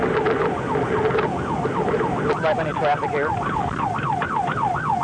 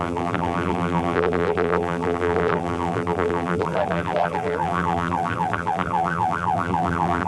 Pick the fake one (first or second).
second